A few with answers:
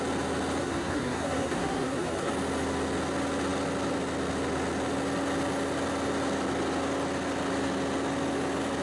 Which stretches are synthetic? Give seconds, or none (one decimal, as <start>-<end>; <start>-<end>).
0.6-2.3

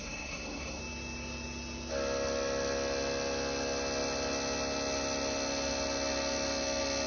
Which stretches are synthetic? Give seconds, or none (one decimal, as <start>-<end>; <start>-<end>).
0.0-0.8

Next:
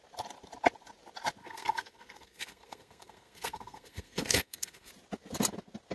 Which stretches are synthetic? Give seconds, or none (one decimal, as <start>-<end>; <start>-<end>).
1.4-4.9

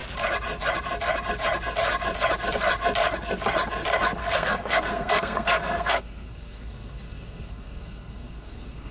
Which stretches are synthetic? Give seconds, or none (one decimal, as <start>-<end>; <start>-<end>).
4.2-8.9

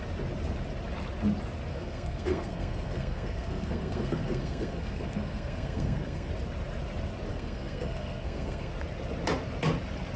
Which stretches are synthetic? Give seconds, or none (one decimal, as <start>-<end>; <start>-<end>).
1.7-6.3; 7.3-8.7

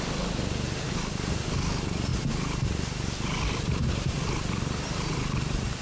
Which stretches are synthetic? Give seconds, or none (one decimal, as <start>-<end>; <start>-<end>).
none

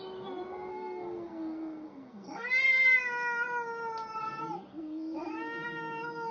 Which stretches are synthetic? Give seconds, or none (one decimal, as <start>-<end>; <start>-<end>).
0.7-2.5; 4.7-5.4

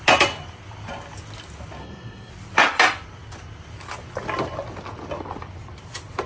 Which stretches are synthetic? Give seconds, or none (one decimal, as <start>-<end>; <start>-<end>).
1.8-2.3